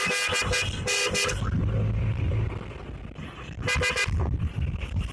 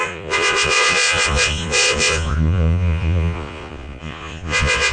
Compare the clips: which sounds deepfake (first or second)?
second